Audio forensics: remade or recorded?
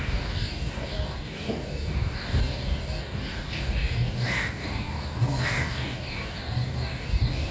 remade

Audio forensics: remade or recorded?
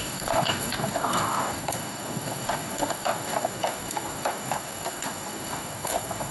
remade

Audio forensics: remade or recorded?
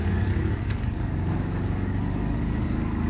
remade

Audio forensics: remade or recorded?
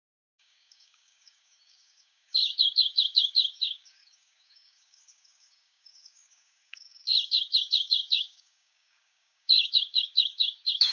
remade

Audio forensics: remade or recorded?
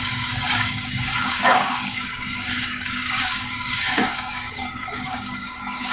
remade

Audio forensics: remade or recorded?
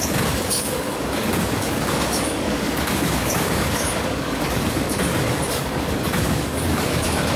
remade